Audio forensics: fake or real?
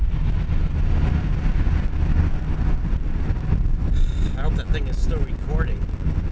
real